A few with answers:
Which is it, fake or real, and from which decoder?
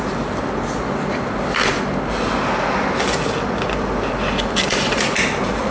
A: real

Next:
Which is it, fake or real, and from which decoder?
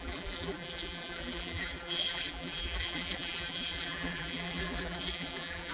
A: fake, vocoder, BigVGAN v2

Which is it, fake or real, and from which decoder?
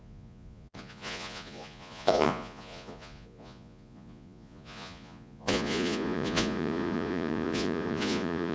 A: fake, vocoder, Vocos